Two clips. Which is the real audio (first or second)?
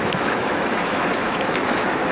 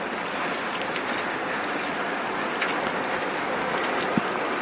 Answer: second